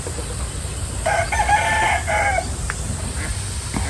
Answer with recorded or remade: recorded